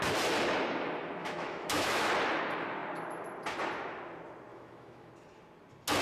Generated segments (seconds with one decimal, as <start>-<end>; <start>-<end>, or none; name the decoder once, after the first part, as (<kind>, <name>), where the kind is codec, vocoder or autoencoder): 1.2-2.1 (autoencoder, DAC-VAE); 4.5-5.1